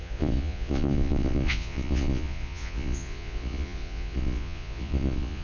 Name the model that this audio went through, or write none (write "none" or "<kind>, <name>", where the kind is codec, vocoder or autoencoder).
vocoder, Vocos